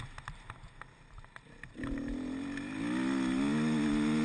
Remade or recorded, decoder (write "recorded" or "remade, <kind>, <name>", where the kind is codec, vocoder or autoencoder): recorded